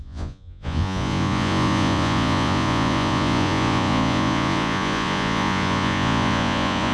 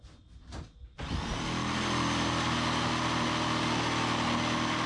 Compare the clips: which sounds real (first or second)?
second